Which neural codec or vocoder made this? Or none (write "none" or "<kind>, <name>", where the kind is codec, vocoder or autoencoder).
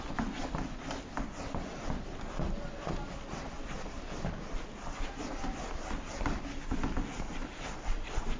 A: vocoder, BigVGAN v2